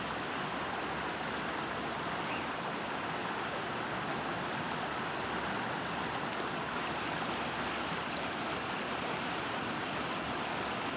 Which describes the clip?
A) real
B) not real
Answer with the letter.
A